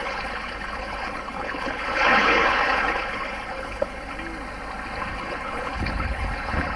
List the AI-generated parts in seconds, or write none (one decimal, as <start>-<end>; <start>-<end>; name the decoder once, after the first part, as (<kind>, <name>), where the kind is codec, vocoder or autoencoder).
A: 0.0-4.1 (codec, HILCodec); 5.1-6.8